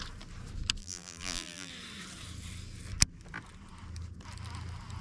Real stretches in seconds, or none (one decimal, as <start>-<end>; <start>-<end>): 0.0-0.8; 1.7-5.0